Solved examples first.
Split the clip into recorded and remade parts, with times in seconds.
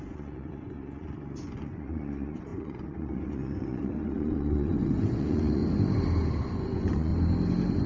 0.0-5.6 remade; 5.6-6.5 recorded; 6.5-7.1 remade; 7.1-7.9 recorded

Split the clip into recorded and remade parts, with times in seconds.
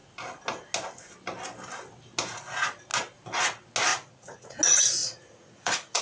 0.0-3.9 recorded; 3.9-4.6 remade; 4.6-5.0 recorded; 5.0-6.0 remade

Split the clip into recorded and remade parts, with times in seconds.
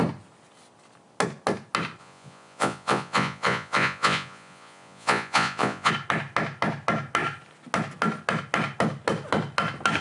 0.0-2.0 recorded; 2.0-5.9 remade; 5.9-10.0 recorded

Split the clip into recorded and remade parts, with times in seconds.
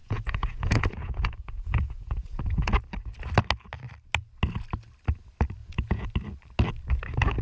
0.0-2.7 remade; 2.7-5.6 recorded; 5.6-6.1 remade; 6.1-7.4 recorded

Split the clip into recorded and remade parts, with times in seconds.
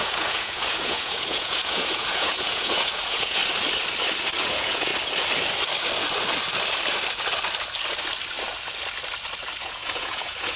0.0-3.4 remade; 3.4-4.4 recorded; 4.4-4.9 remade; 4.9-9.6 recorded; 9.6-10.6 remade